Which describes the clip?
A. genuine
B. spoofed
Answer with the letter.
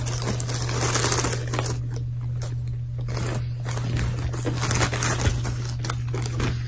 A